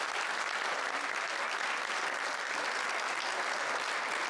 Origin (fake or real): real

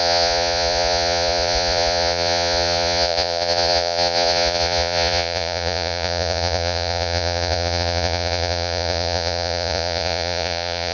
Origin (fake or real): fake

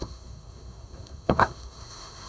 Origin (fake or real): fake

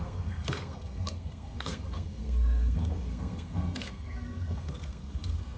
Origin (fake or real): fake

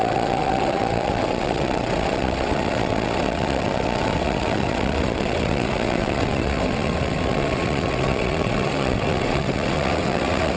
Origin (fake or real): fake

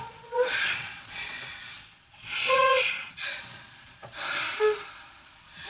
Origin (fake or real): fake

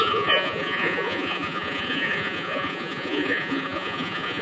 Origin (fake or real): fake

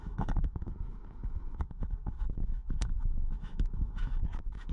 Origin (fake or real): fake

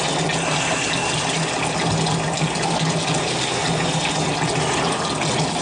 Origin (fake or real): real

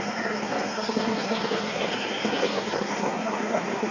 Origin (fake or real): fake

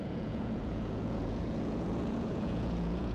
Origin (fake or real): fake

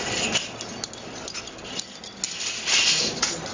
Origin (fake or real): real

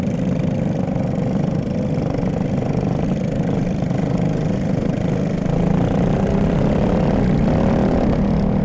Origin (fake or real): real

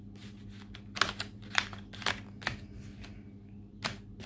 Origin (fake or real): real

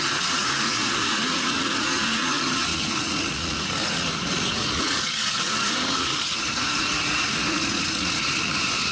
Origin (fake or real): fake